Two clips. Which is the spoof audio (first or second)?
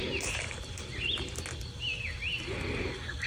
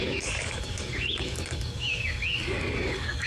second